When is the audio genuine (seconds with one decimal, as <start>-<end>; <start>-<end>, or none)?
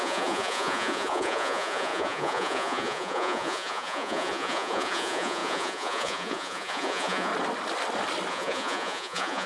7.3-8.3